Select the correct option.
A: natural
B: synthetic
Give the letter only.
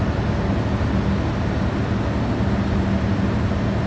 A